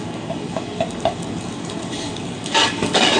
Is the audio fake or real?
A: fake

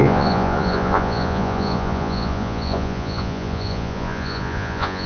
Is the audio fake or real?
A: fake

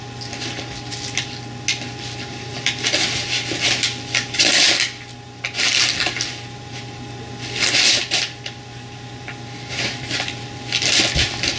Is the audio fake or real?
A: real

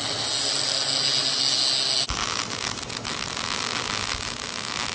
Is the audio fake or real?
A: real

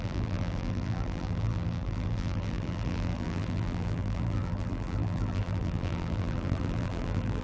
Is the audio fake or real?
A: fake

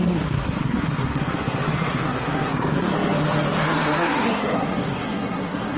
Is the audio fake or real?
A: fake